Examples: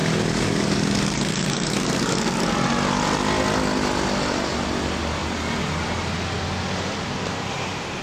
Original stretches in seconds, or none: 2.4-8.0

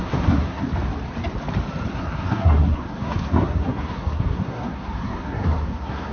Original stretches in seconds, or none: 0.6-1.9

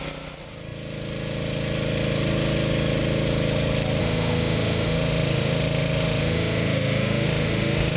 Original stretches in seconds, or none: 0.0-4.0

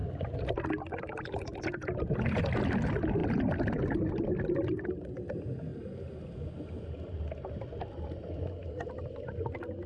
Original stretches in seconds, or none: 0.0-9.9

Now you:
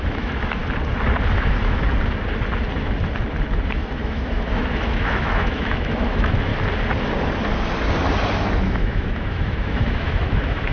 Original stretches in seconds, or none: 0.6-1.3; 1.8-3.9; 6.5-8.6

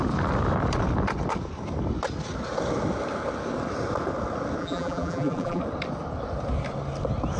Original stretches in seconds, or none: 0.0-4.6; 5.6-7.4

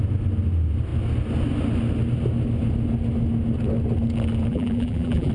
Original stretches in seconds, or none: 0.0-4.5

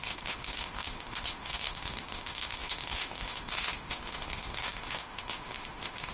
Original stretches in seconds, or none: none